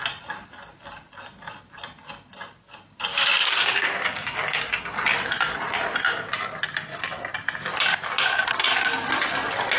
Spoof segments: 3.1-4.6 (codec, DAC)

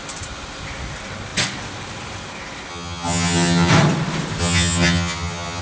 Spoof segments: 2.7-3.7 (vocoder, HiFi-GAN); 4.4-5.6